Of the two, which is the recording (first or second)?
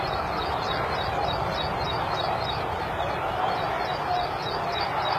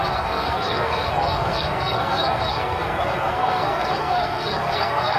first